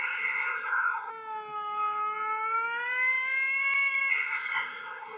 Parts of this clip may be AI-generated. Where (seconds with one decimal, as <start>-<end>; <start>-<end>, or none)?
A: 0.0-1.1; 4.1-5.2